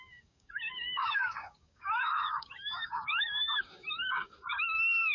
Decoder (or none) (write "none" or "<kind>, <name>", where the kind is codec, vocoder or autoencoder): codec, DAC